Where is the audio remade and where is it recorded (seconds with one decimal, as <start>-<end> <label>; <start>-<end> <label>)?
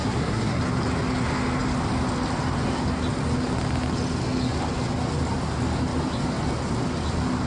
0.0-0.6 remade; 0.6-7.5 recorded